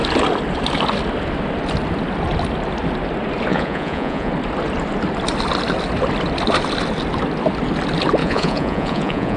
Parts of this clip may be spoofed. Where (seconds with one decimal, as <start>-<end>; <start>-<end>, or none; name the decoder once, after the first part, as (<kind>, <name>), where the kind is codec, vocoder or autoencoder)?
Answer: 3.5-4.3 (vocoder, Vocos); 8.2-9.4

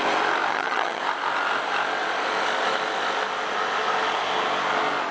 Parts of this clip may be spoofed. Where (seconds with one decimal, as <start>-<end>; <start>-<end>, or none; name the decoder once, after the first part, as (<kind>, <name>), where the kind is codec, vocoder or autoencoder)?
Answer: 0.5-1.0 (vocoder, HiFi-GAN)

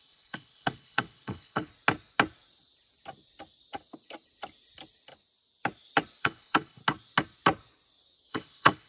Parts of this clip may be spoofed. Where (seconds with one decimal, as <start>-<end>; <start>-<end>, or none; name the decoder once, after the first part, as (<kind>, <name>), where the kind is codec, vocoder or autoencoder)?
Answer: 0.0-1.7 (codec, HILCodec); 6.2-6.8; 8.3-8.9